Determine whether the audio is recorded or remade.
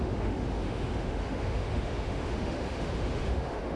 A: remade